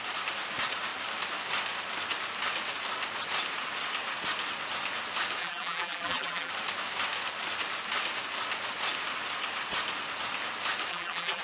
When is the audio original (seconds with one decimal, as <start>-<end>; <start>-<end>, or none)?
0.0-5.4; 6.5-10.9

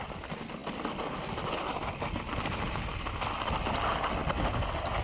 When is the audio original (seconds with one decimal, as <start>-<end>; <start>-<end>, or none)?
0.0-5.0

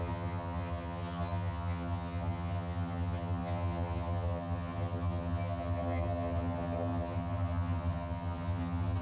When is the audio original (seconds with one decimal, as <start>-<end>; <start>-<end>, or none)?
none

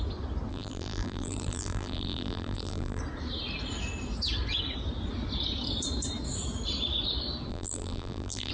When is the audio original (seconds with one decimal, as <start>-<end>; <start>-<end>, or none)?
0.0-0.5; 3.0-7.5